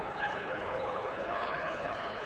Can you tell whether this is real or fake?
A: fake